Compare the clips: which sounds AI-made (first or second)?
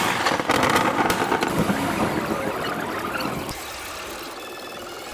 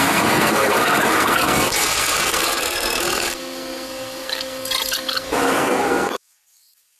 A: second